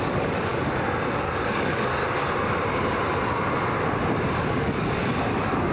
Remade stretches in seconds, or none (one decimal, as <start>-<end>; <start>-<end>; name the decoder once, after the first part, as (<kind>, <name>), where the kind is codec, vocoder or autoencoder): 0.0-0.5 (codec, DAC); 1.5-2.0; 4.5-5.7